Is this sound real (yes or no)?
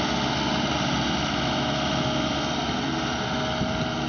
yes